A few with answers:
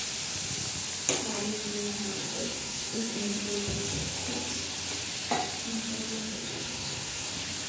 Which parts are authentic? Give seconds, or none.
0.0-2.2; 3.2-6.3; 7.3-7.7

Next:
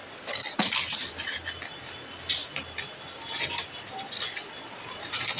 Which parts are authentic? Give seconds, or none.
0.0-5.4

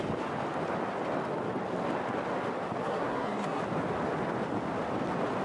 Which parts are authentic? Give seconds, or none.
0.0-2.8; 3.6-5.4

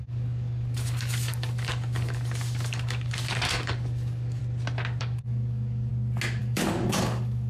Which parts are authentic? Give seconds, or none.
4.4-5.0; 5.9-6.4

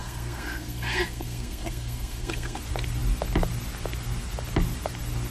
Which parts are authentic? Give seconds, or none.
2.6-5.3